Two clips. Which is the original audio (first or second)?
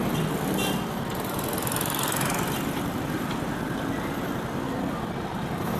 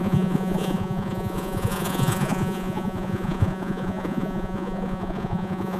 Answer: first